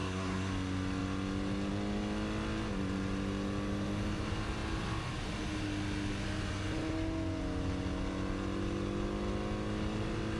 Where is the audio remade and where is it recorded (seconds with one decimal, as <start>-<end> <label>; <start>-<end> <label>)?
0.0-0.5 remade; 0.5-10.4 recorded